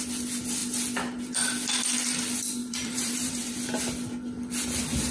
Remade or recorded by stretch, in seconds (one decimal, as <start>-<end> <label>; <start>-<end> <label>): 0.0-2.6 recorded; 2.6-3.5 remade; 3.5-5.1 recorded

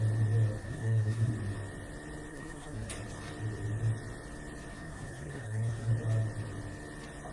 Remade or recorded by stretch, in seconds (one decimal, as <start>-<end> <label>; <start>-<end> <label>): 0.0-0.6 recorded; 0.6-1.3 remade; 1.3-2.3 recorded; 2.3-2.9 remade; 2.9-4.7 recorded; 4.7-5.9 remade; 5.9-7.3 recorded

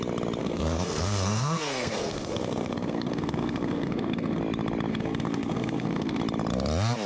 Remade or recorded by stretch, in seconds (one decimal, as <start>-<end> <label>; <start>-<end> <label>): 0.0-0.4 recorded; 0.4-4.4 remade; 4.4-4.9 recorded; 4.9-6.2 remade; 6.2-7.1 recorded

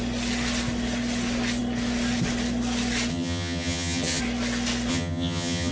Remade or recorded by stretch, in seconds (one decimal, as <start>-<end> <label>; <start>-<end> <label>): 0.0-3.1 recorded; 3.1-4.2 remade; 4.2-4.9 recorded; 4.9-5.7 remade

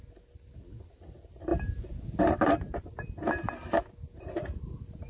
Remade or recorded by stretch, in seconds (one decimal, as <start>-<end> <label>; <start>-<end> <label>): 0.0-5.1 recorded